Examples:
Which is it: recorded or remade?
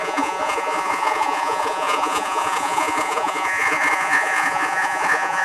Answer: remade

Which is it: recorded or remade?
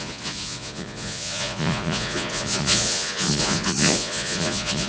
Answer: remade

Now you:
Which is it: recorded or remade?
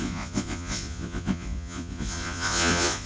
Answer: remade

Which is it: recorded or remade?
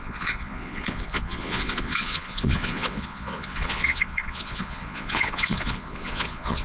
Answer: remade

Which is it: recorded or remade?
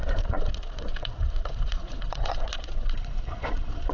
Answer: remade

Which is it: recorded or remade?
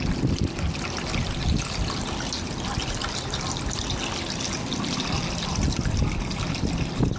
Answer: recorded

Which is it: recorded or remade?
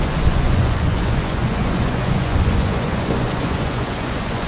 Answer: remade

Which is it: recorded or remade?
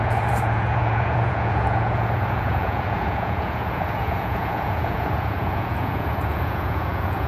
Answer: remade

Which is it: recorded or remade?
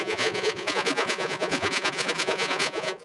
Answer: remade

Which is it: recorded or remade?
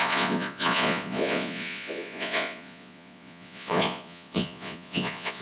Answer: remade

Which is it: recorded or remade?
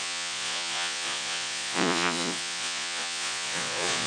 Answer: remade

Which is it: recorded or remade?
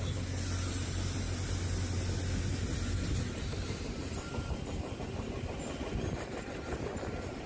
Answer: recorded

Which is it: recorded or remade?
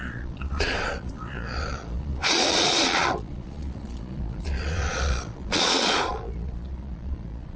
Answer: remade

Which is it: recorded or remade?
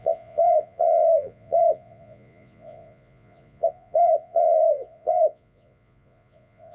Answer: remade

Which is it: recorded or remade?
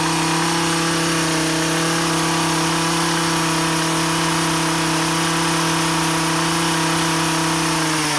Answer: recorded